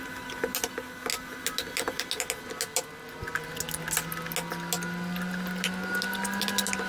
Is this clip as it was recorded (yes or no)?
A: yes